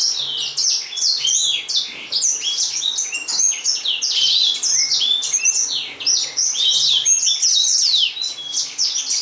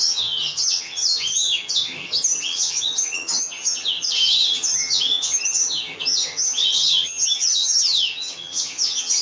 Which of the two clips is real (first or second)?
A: first